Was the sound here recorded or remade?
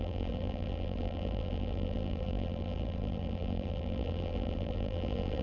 remade